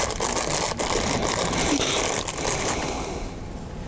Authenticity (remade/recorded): recorded